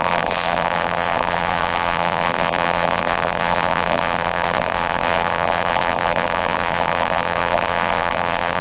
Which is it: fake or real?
fake